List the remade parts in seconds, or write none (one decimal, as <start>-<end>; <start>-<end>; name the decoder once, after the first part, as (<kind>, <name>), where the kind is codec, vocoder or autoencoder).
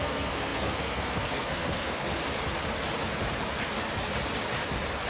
0.0-2.1 (codec, SNAC)